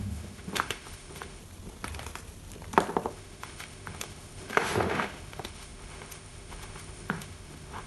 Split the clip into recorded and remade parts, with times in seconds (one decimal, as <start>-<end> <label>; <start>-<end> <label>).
0.0-1.4 remade; 1.4-3.1 recorded; 3.1-7.9 remade